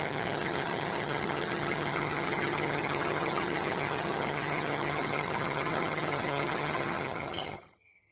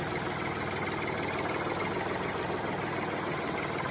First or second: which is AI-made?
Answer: first